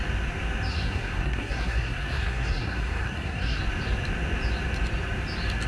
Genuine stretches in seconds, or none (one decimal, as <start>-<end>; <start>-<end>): 0.0-0.7; 3.6-5.7